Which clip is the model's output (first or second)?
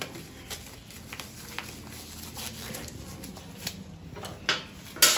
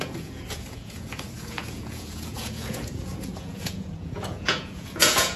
second